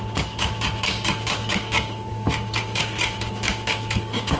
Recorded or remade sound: remade